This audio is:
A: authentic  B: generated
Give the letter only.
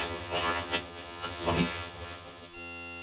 B